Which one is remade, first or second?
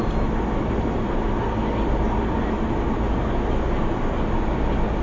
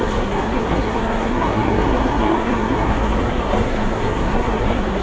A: second